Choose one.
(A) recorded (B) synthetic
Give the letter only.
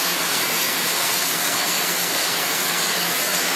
B